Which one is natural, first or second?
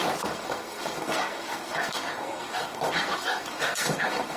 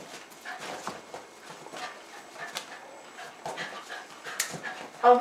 second